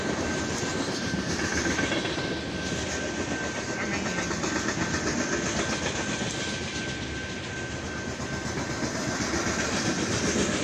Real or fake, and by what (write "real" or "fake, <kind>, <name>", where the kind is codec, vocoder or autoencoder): real